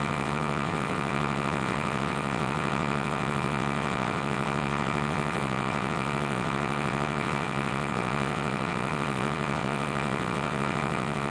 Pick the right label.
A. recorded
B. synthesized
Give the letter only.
B